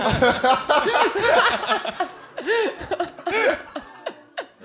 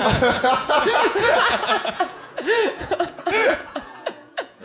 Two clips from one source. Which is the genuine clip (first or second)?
first